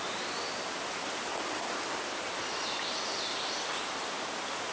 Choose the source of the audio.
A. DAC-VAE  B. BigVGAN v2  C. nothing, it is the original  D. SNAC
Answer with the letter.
C